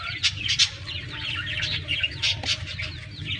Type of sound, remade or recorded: recorded